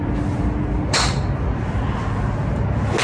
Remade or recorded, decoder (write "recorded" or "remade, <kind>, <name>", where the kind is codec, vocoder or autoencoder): recorded